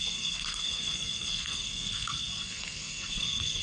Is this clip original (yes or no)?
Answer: no